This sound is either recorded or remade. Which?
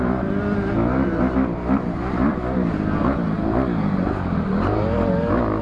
recorded